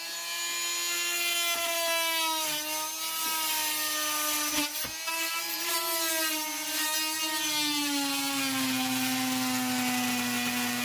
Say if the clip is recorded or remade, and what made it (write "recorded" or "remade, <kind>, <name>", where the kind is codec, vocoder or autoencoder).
recorded